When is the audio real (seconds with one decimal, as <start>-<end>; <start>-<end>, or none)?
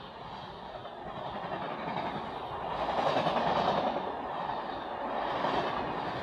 0.0-6.2